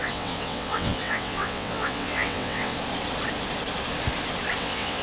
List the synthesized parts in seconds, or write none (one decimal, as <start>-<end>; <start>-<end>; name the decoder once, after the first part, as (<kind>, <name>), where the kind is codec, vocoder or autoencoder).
0.0-2.7 (vocoder, WaveNeXt); 4.6-5.0